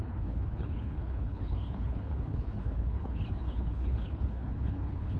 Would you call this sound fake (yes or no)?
yes